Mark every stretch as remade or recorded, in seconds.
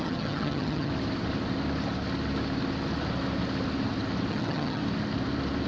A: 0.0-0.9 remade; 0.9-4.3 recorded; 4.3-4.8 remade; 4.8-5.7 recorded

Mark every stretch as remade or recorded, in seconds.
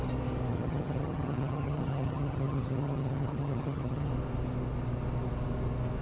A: 0.0-0.5 recorded; 0.5-4.1 remade; 4.1-6.0 recorded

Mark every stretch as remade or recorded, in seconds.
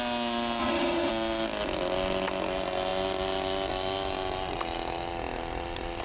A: 0.0-0.6 recorded; 0.6-1.1 remade; 1.1-6.0 recorded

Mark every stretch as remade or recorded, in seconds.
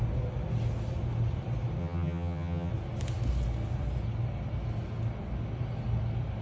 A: 0.0-1.8 recorded; 1.8-2.7 remade; 2.7-6.4 recorded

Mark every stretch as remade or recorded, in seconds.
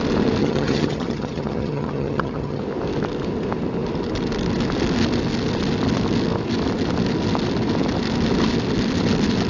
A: 0.0-0.4 recorded; 0.4-2.6 remade; 2.6-9.5 recorded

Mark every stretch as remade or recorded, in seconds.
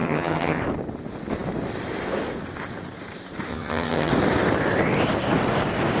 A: 0.0-0.6 remade; 0.6-3.5 recorded; 3.5-4.1 remade; 4.1-6.0 recorded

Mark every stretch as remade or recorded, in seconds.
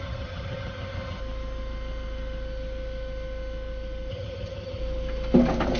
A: 0.0-1.2 remade; 1.2-4.1 recorded; 4.1-4.8 remade; 4.8-5.8 recorded